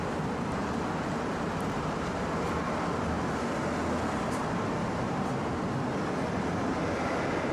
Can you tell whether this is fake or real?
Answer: real